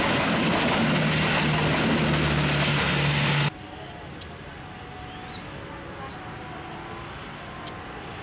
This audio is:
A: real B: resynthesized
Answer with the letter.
A